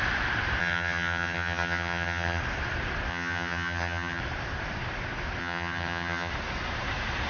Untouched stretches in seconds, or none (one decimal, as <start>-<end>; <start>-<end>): 0.0-0.6; 2.4-3.1; 4.2-5.4; 6.3-7.3